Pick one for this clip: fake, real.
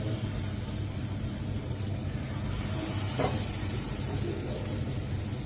real